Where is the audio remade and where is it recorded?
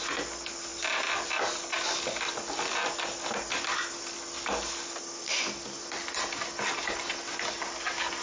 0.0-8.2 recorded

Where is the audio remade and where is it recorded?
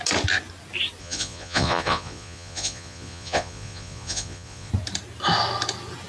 0.0-1.0 recorded; 1.0-4.7 remade; 4.7-6.1 recorded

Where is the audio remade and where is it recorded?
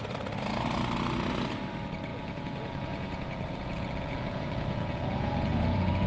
0.0-2.1 recorded; 2.1-6.1 remade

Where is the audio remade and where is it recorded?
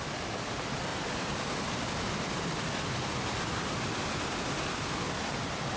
0.0-5.8 recorded